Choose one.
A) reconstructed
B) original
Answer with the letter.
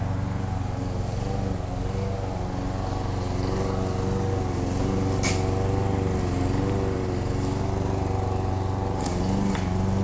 B